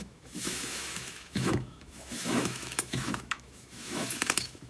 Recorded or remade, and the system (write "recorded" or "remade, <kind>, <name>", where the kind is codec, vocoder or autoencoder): remade, autoencoder, DAC-VAE